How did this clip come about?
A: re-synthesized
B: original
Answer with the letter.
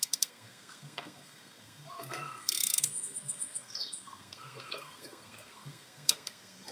A